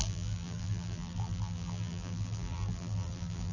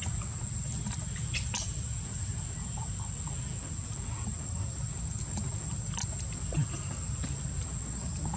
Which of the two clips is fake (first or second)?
first